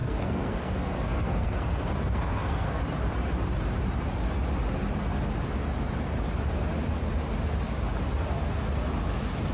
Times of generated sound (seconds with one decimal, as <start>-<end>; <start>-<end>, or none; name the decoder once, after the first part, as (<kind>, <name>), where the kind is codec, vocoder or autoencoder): 0.0-2.8 (codec, SNAC)